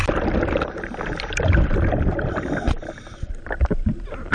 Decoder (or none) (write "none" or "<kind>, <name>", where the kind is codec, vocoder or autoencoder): vocoder, BigVGAN v2